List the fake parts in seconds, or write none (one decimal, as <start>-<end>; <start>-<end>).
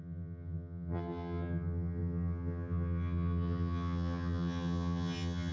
0.0-5.5